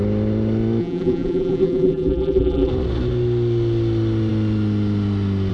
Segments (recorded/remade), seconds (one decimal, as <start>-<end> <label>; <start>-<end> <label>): 0.0-0.8 recorded; 0.8-2.7 remade; 2.7-5.5 recorded